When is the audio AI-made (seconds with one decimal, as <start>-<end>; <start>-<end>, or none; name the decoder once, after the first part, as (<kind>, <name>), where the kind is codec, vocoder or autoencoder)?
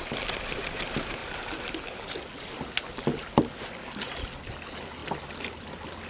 none